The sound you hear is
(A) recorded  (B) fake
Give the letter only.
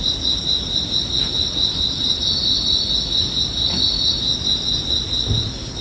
A